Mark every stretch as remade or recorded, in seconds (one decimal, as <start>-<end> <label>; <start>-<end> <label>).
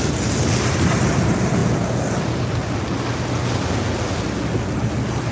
0.0-5.3 recorded